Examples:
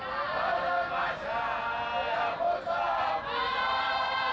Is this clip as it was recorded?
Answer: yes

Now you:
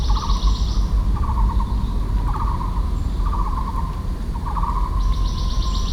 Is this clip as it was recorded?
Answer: no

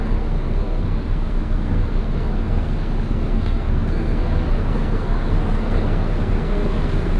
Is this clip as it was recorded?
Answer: no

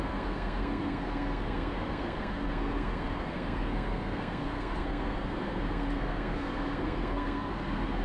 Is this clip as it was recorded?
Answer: no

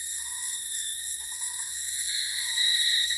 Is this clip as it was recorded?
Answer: no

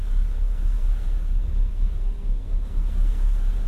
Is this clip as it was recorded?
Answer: no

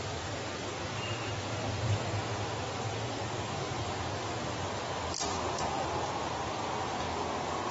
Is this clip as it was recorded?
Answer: yes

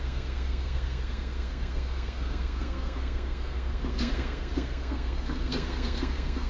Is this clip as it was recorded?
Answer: no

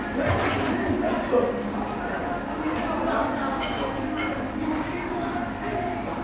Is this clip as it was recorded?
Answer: yes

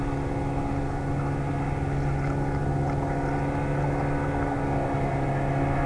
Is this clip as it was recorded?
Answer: yes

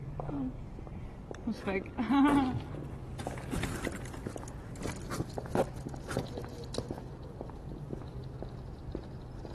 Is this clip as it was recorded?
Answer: yes